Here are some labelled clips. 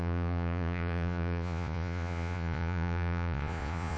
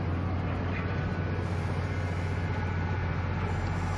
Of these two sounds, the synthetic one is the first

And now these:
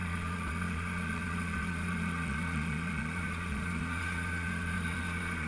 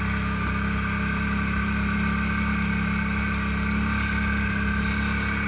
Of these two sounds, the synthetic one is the first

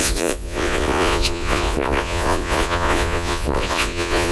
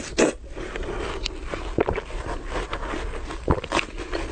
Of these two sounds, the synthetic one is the first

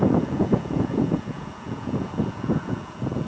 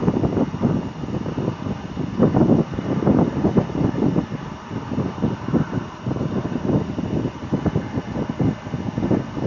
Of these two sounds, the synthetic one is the first